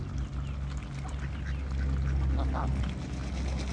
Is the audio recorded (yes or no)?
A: yes